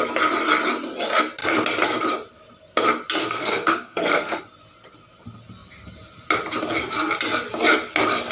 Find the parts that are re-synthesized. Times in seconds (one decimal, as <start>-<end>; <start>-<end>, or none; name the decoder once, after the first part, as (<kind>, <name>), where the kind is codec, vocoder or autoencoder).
3.2-4.4 (codec, SNAC)